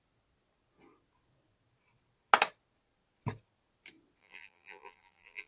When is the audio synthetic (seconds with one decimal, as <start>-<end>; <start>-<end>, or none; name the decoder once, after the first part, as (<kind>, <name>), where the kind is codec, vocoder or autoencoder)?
4.2-5.5 (vocoder, BigVGAN v2)